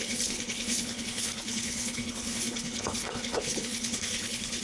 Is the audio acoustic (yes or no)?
no